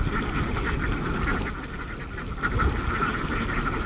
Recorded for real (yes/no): yes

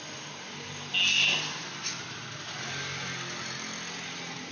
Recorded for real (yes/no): yes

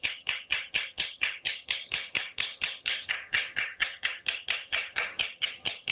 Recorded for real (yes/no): no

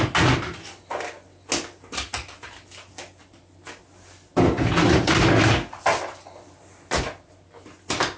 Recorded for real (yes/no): yes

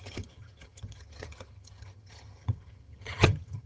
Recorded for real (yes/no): no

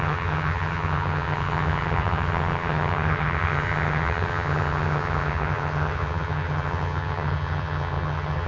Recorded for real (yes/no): no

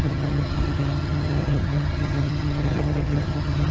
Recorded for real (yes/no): no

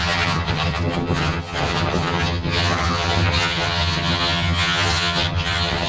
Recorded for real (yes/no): no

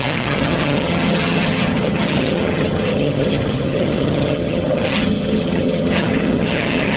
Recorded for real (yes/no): no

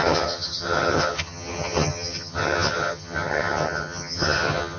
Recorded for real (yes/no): no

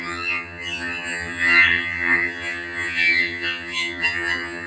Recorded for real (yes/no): no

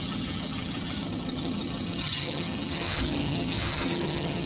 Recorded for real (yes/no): no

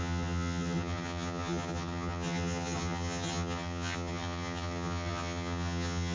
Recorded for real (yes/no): no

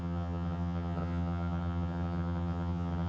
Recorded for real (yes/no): no